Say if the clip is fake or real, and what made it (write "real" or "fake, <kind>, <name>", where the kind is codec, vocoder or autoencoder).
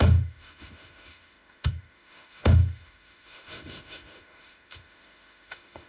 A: fake, autoencoder, DAC-VAE